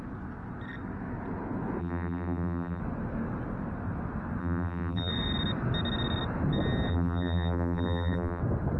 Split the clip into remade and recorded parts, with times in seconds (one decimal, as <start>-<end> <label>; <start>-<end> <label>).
0.0-1.8 recorded; 1.8-2.8 remade; 2.8-4.4 recorded; 4.4-5.1 remade; 5.1-6.9 recorded; 6.9-8.4 remade; 8.4-8.8 recorded